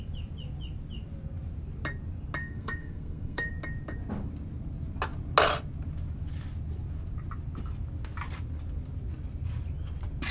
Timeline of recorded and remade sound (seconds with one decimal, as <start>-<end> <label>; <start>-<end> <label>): 0.0-2.4 recorded; 2.4-3.5 remade; 3.5-10.3 recorded